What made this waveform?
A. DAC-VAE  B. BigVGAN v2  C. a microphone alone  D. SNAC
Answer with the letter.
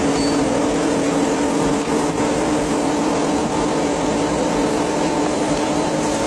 C